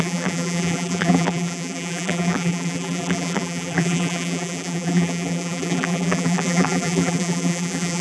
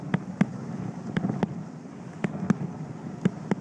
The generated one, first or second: first